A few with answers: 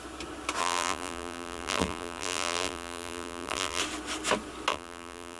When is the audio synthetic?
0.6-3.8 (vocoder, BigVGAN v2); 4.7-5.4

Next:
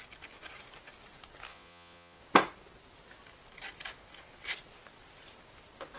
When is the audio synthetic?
1.5-2.2 (vocoder, Vocos)